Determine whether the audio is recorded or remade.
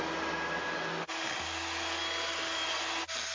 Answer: recorded